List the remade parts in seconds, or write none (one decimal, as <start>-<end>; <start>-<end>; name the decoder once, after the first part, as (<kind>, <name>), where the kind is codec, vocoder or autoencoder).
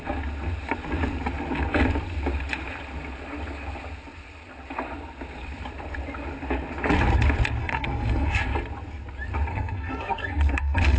7.6-8.4 (codec, SNAC); 9.5-11.0